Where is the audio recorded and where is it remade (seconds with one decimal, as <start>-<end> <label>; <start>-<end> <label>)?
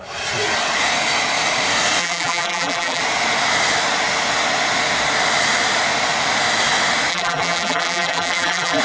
0.0-2.0 recorded; 2.0-3.0 remade; 3.0-7.1 recorded; 7.1-8.8 remade